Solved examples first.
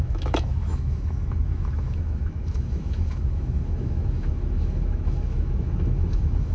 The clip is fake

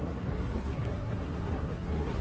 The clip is fake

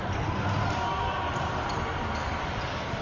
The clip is real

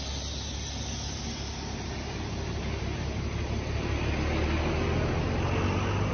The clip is real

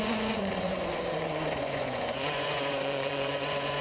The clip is fake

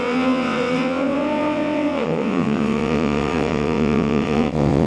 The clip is fake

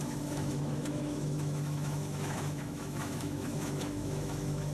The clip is fake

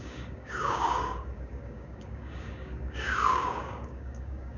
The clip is fake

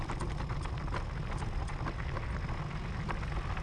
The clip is real